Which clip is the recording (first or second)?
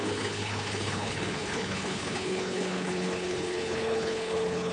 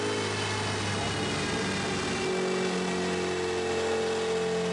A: second